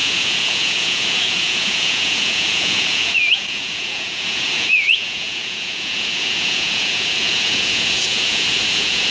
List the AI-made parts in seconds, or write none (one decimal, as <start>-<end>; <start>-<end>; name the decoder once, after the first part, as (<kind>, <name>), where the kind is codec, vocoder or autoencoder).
0.0-9.1 (vocoder, Vocos)